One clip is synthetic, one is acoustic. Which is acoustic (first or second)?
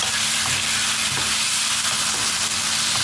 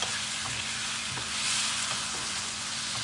first